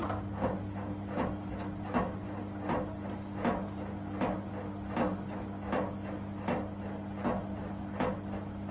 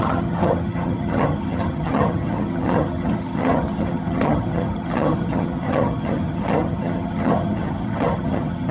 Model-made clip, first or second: second